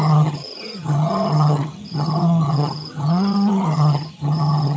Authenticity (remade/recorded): remade